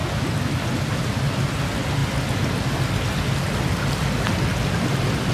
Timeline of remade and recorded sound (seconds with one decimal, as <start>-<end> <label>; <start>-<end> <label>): 0.0-5.3 recorded